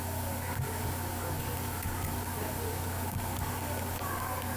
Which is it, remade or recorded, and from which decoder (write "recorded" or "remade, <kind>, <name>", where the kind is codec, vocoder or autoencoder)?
remade, codec, DAC